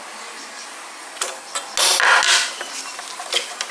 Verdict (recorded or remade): recorded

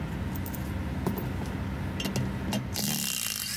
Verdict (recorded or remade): recorded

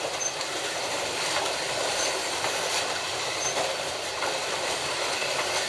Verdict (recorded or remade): remade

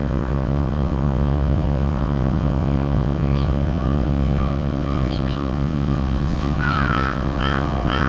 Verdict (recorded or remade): remade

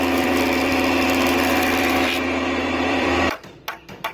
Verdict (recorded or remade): remade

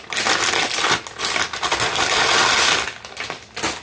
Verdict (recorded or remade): recorded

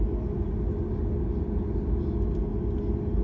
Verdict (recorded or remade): recorded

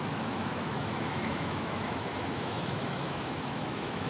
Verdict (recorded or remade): remade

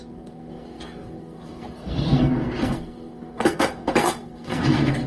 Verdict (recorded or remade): remade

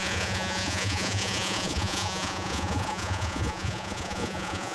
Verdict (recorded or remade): remade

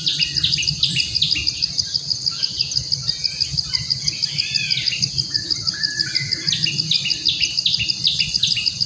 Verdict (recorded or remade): recorded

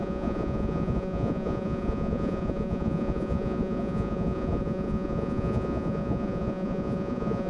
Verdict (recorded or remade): remade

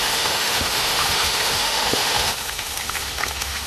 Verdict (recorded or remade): remade